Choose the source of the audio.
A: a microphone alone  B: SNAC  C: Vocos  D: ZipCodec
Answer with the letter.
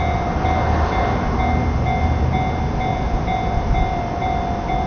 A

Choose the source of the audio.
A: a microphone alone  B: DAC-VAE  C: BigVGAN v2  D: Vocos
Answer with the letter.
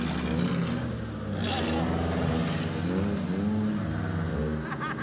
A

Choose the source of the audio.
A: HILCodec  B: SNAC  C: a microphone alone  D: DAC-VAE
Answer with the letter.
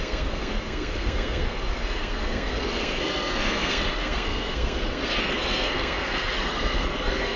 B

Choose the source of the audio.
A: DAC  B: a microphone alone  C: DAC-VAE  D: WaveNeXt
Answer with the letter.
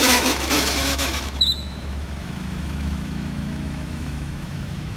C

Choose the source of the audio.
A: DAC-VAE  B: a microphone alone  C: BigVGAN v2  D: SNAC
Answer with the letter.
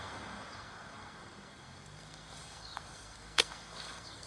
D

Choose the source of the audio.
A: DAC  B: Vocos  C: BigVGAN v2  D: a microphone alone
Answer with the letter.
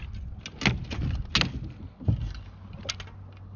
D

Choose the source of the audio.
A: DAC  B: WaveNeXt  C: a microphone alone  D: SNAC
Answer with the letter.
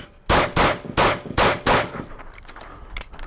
C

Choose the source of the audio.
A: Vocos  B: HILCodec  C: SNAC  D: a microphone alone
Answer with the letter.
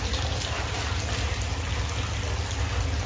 D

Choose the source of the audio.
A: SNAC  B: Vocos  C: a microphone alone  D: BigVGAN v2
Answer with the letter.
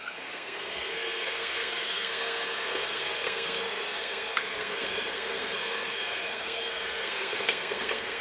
A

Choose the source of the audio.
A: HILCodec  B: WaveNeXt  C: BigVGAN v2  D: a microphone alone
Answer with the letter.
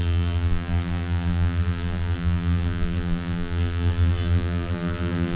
C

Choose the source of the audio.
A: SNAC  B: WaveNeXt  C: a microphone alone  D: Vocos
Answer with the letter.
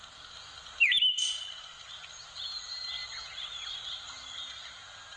C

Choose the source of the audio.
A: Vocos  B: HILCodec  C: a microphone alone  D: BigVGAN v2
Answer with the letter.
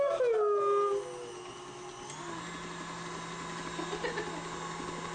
C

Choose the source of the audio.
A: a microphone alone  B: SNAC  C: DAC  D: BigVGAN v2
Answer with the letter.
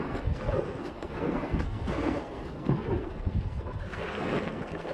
B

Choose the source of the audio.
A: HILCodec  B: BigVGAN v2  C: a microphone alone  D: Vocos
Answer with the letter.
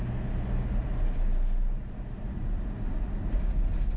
C